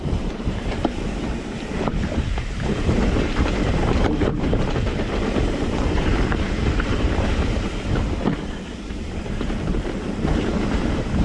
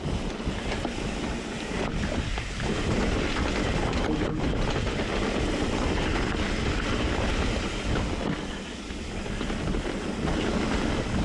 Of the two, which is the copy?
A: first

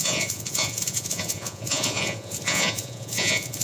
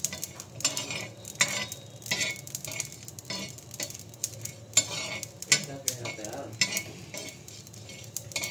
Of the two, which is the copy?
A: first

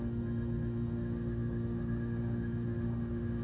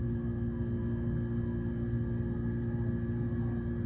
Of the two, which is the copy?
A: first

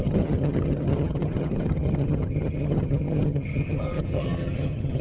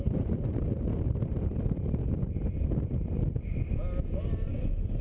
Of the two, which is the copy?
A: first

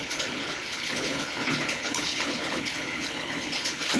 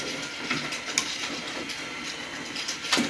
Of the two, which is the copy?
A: first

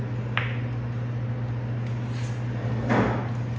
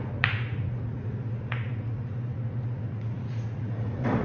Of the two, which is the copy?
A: second